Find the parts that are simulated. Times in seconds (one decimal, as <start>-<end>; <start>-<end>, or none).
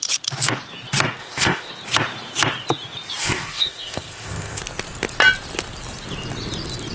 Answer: 1.2-1.7; 3.2-4.6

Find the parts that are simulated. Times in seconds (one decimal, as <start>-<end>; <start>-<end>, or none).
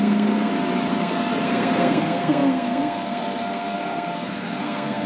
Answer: 0.0-0.5; 1.0-5.1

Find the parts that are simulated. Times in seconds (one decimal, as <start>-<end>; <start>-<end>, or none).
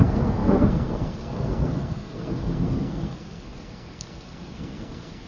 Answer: 0.0-5.3